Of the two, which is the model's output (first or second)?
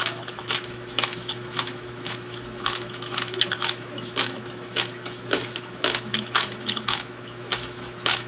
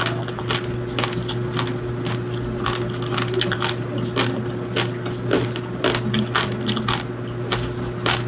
first